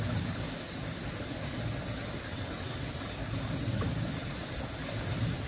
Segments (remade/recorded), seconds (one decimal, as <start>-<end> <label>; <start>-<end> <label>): 0.0-2.3 recorded; 2.3-2.9 remade; 2.9-5.5 recorded

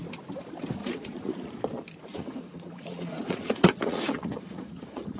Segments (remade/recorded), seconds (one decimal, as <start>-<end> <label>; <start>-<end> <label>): 0.0-0.8 recorded; 0.8-1.6 remade; 1.6-2.1 recorded; 2.1-5.2 remade

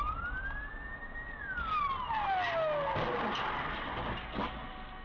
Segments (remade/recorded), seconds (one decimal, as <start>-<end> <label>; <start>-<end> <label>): 0.0-5.0 recorded

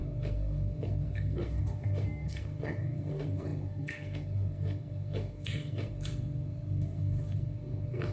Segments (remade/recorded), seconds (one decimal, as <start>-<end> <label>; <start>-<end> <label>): 0.0-8.1 remade

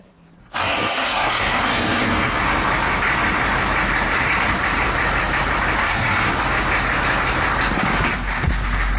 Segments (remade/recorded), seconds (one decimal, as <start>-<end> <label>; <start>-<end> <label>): 0.0-0.4 recorded; 0.4-2.4 remade; 2.4-5.8 recorded; 5.8-6.3 remade; 6.3-9.0 recorded

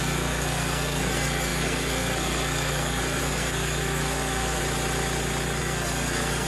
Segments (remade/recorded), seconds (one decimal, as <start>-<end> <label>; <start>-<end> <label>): 0.0-4.6 remade; 4.6-5.6 recorded; 5.6-6.5 remade

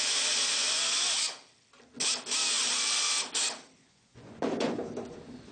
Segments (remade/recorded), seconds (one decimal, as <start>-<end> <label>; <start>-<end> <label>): 0.0-1.4 remade; 1.4-3.8 recorded; 3.8-4.8 remade; 4.8-5.5 recorded

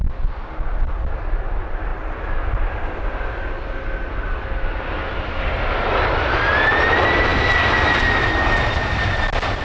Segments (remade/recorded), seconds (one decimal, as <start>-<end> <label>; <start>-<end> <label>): 0.0-9.6 recorded